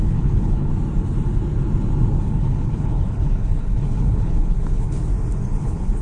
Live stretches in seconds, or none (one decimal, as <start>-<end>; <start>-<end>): 0.7-2.2; 5.1-5.6